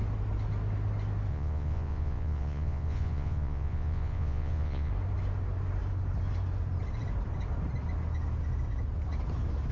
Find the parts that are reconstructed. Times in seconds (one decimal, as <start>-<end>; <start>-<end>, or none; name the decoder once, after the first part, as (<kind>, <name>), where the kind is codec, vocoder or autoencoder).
1.3-4.9 (vocoder, Vocos)